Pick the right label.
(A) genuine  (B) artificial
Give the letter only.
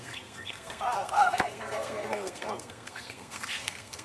B